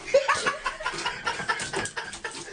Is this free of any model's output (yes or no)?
yes